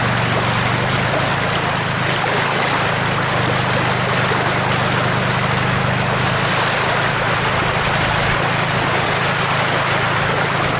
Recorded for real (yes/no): yes